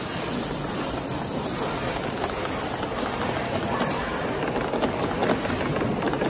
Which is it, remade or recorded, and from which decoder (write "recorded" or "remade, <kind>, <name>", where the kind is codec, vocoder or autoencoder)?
recorded